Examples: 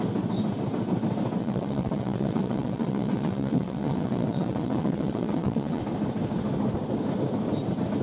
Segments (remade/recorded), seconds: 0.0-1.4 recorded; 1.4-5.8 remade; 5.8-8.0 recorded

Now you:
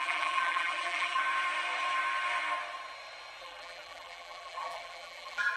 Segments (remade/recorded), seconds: 0.0-1.2 remade; 1.2-3.4 recorded; 3.4-5.6 remade